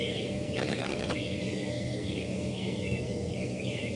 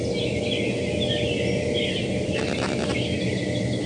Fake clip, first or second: first